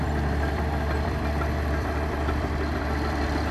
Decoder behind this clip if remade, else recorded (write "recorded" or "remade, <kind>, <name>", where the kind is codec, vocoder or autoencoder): remade, vocoder, BigVGAN v2